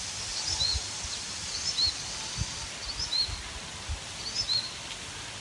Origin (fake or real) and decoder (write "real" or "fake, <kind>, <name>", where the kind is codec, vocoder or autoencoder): real